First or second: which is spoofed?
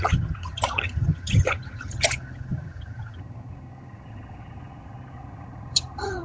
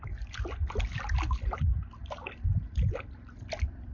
first